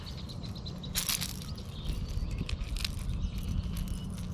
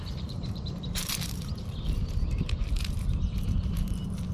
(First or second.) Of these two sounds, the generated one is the second